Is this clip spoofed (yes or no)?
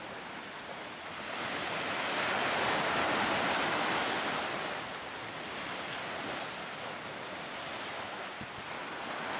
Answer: no